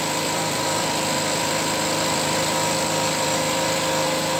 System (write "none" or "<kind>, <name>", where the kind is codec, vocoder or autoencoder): vocoder, BigVGAN v2